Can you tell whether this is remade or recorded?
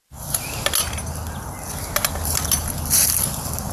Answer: recorded